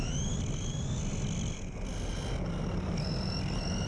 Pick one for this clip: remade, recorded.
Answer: recorded